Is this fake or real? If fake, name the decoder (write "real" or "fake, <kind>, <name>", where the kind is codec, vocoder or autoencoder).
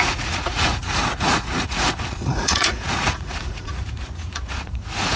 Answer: fake, vocoder, Vocos